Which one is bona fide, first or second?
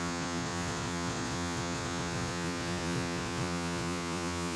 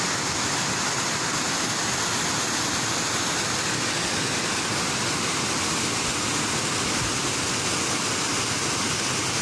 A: second